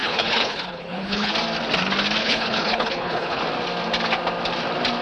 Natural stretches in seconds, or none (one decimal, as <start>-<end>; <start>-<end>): 1.3-2.2; 3.4-5.0